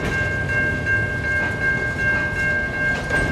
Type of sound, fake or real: real